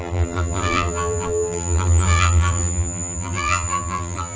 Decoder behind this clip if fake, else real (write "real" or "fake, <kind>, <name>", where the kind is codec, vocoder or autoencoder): fake, vocoder, BigVGAN v2